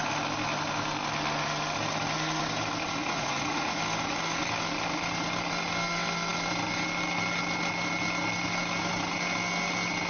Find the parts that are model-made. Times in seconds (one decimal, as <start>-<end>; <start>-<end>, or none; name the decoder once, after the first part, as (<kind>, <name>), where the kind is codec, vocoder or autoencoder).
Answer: 3.0-3.8 (vocoder, Vocos)